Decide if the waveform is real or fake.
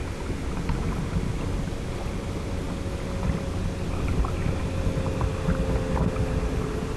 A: real